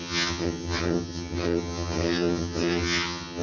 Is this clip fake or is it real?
fake